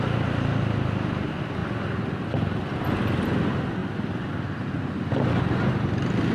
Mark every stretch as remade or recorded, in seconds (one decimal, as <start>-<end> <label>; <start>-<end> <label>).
0.0-6.3 recorded